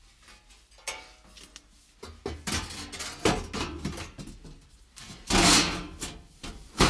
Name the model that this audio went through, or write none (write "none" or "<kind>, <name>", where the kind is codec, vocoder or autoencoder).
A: none